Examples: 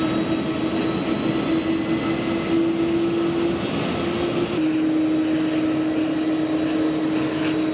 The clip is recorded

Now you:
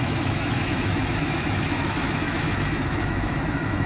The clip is remade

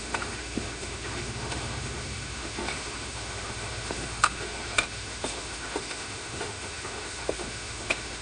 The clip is remade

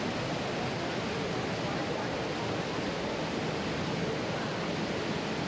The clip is recorded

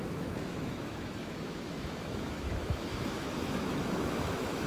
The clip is remade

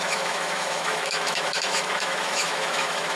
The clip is remade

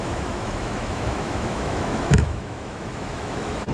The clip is remade